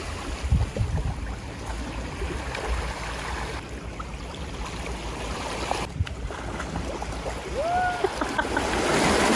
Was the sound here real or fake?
real